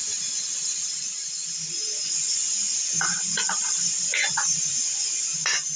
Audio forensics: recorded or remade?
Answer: recorded